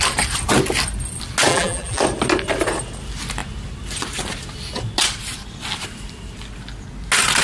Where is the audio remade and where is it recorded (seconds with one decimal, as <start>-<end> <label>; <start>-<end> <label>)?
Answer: 0.0-1.5 recorded; 1.5-2.0 remade; 2.0-7.4 recorded